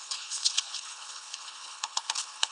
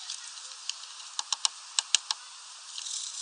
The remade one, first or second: first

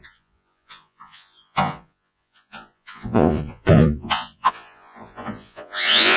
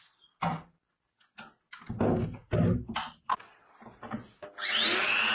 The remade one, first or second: first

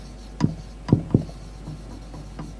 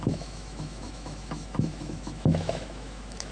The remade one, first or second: second